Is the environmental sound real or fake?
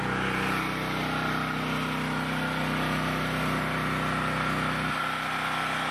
real